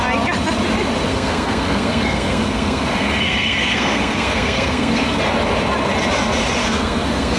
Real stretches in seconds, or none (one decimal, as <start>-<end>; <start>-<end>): 0.0-1.1; 5.2-6.6